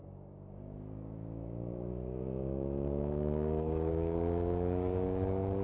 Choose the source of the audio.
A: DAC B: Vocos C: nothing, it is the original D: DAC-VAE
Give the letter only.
A